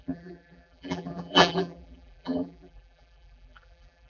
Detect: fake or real fake